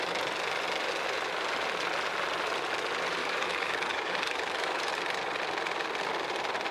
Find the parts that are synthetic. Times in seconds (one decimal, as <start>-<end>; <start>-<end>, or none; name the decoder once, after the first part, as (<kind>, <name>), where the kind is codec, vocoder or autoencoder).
3.2-4.9 (codec, DAC)